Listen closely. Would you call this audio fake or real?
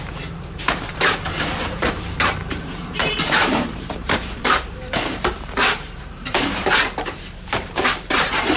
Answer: fake